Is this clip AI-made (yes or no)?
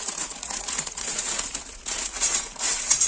yes